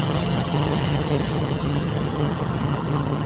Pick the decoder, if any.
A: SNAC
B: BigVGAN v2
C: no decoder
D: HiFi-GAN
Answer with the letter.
D